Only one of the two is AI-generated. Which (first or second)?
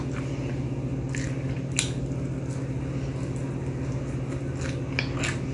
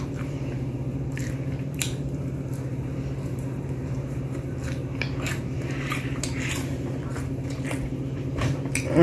second